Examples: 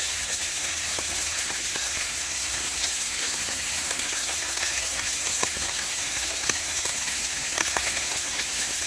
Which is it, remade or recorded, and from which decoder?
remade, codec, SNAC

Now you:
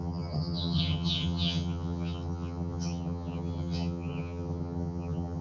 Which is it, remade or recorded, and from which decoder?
remade, vocoder, HiFi-GAN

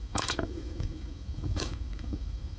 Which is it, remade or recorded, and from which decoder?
remade, autoencoder, DAC-VAE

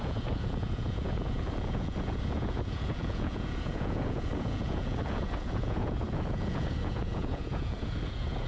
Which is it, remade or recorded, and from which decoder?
remade, vocoder, Vocos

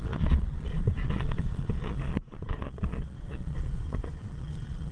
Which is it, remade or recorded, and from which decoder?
remade, vocoder, Vocos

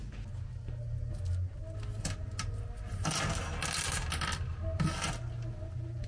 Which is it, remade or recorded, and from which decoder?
recorded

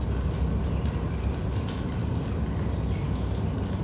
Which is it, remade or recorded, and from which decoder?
recorded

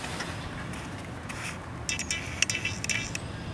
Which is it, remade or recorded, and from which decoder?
recorded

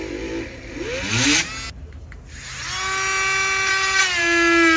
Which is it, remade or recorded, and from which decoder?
recorded